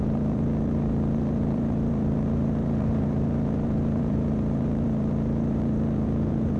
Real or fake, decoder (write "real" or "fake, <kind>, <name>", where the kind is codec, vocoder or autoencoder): fake, vocoder, BigVGAN v2